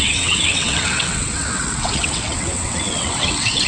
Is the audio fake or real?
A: fake